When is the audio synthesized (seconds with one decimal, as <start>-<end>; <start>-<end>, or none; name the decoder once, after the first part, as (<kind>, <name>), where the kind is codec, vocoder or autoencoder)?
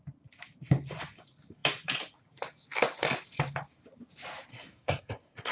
4.5-5.5 (codec, SNAC)